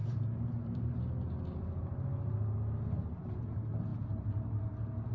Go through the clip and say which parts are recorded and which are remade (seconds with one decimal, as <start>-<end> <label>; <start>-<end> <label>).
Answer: 0.0-1.0 remade; 1.0-5.1 recorded